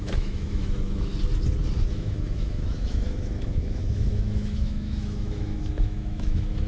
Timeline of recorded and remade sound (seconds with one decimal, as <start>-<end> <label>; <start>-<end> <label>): 0.0-1.1 remade; 1.1-1.9 recorded; 1.9-6.7 remade